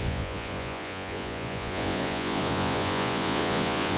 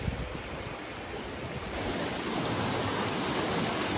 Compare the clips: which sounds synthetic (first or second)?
first